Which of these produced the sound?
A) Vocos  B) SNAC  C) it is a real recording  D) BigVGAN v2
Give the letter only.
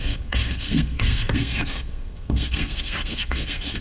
B